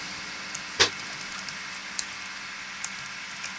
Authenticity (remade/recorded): recorded